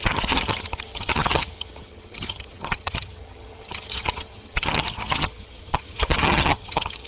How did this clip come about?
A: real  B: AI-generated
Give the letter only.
B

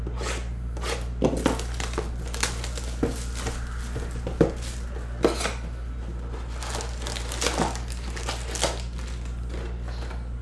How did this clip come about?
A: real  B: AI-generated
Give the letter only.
A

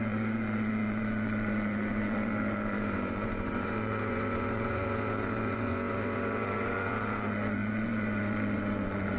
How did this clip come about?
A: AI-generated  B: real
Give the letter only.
A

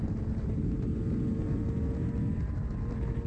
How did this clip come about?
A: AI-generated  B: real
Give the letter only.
B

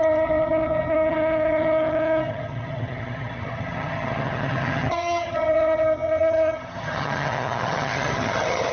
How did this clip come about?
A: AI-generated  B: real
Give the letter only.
A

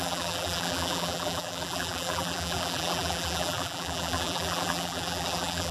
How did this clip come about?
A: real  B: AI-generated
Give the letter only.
B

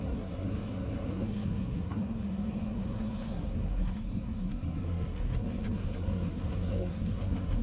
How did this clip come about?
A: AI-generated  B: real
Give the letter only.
A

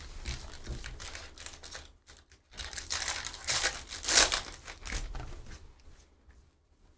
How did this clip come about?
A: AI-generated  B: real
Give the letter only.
B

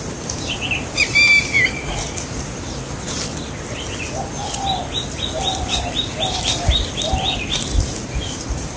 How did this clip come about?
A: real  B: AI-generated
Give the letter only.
A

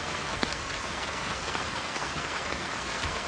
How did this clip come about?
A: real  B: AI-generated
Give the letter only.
B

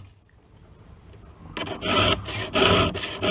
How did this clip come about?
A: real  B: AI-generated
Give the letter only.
A